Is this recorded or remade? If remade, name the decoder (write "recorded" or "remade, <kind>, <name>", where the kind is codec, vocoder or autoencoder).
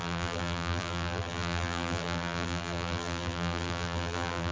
remade, vocoder, BigVGAN v2